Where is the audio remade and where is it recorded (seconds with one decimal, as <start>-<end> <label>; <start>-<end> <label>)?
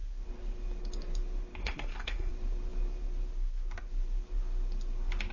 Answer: 0.0-1.6 recorded; 1.6-2.3 remade; 2.3-5.3 recorded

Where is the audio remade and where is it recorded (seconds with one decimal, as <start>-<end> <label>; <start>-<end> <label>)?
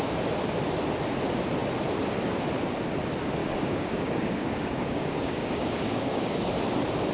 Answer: 0.0-3.4 recorded; 3.4-6.5 remade; 6.5-7.1 recorded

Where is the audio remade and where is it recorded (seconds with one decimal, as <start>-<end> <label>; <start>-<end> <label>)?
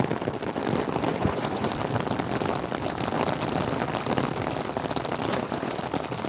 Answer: 0.0-1.1 recorded; 1.1-1.7 remade; 1.7-5.3 recorded; 5.3-5.8 remade; 5.8-6.3 recorded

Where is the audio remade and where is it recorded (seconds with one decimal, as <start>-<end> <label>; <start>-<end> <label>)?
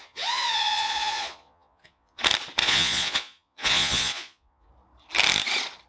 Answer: 0.0-2.2 remade; 2.2-2.6 recorded; 2.6-4.7 remade; 4.7-5.9 recorded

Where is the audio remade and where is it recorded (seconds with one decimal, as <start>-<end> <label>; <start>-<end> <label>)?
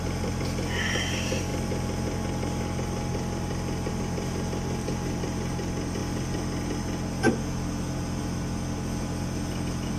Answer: 0.0-10.0 recorded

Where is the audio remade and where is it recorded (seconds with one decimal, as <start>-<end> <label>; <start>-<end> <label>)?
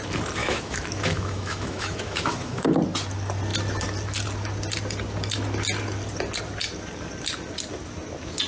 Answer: 0.0-0.4 recorded; 0.4-2.7 remade; 2.7-8.5 recorded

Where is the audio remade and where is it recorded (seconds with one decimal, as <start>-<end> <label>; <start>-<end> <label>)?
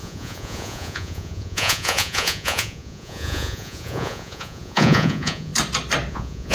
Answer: 0.0-5.5 remade; 5.5-6.1 recorded; 6.1-6.5 remade